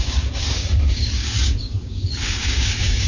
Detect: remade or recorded remade